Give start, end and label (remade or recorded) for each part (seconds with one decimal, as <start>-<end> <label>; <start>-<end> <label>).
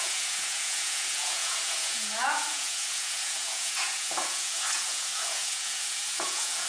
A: 0.0-6.7 remade